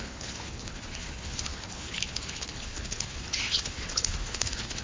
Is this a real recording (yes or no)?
no